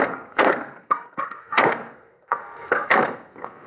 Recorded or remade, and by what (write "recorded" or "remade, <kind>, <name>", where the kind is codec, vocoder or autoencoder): remade, codec, SNAC